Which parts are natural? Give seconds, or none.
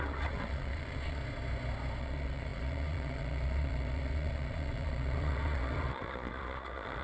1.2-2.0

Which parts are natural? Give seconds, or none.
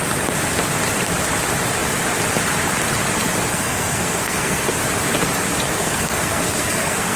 0.0-3.5; 4.8-5.7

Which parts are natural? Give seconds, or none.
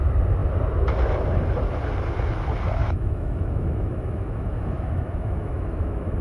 0.0-2.8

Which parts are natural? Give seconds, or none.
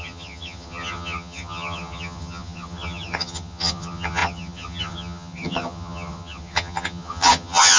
none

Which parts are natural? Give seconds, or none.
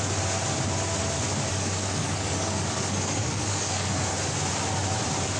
0.0-1.5; 3.9-5.4